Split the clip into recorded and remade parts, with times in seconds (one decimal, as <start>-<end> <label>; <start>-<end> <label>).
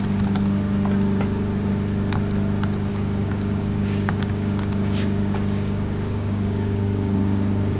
0.0-2.9 recorded; 2.9-7.8 remade